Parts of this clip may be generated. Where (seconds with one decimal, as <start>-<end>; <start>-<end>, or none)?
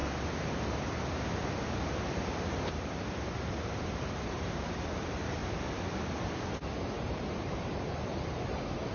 2.0-5.4; 6.8-8.9